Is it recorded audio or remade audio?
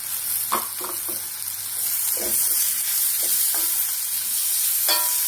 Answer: recorded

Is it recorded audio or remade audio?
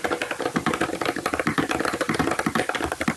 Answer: recorded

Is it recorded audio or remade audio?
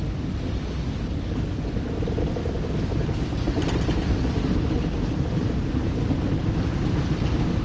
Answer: recorded